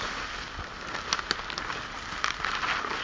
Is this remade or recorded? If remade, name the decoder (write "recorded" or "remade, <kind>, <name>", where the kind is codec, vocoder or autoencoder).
recorded